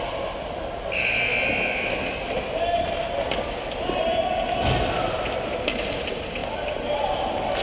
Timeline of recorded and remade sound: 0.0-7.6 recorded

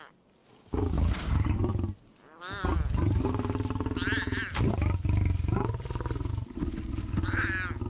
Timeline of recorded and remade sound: 0.0-0.4 recorded; 0.4-1.1 remade; 1.1-7.9 recorded

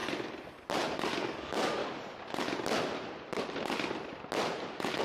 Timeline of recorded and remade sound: 0.0-0.9 recorded; 0.9-1.8 remade; 1.8-5.0 recorded

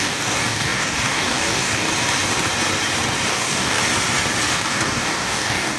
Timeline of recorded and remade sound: 0.0-1.9 remade; 1.9-3.3 recorded; 3.3-3.8 remade; 3.8-4.5 recorded; 4.5-5.8 remade